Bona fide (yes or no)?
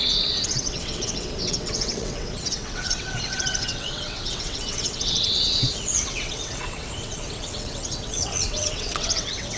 no